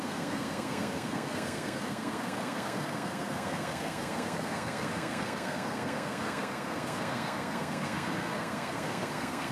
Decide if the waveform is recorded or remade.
remade